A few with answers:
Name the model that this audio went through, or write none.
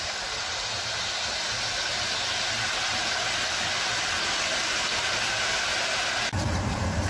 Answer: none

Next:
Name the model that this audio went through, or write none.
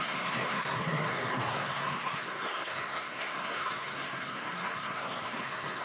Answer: codec, SNAC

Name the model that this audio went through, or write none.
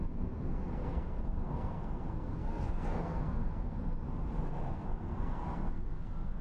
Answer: codec, SNAC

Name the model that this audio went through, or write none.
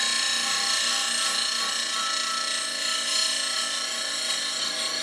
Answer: none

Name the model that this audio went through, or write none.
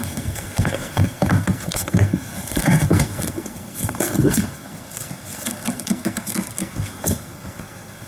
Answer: codec, SNAC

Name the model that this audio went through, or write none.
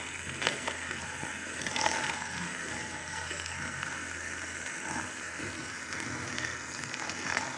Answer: codec, SNAC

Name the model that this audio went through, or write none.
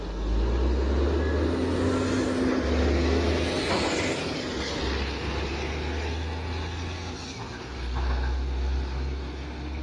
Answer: none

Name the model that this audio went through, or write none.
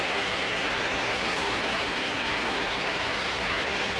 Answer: codec, SNAC